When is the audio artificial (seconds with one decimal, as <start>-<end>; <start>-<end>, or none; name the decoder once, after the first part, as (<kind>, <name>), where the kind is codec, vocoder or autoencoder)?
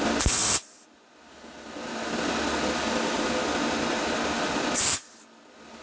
none